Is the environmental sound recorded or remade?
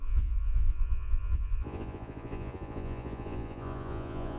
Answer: remade